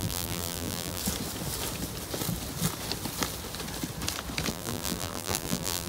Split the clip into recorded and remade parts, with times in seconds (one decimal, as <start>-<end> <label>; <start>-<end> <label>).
0.0-1.0 remade; 1.0-4.5 recorded; 4.5-5.9 remade